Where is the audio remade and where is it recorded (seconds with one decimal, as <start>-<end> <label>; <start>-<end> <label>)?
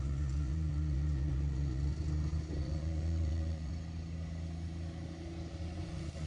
0.0-1.9 remade; 1.9-2.5 recorded; 2.5-3.7 remade; 3.7-5.5 recorded; 5.5-6.3 remade